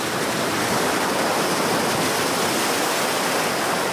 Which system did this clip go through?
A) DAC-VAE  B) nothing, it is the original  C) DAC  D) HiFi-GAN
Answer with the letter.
B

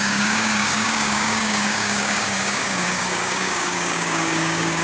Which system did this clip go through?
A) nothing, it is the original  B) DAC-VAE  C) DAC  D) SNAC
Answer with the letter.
C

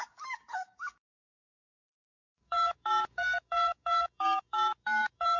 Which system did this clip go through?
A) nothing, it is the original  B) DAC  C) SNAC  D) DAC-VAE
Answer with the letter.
B